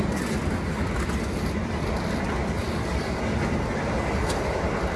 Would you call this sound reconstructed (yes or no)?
no